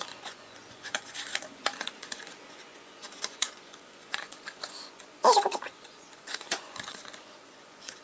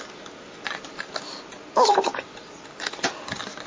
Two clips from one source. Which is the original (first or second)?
second